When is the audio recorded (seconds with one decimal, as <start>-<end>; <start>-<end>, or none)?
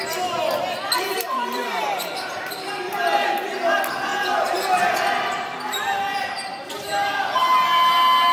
0.0-1.1; 3.4-8.3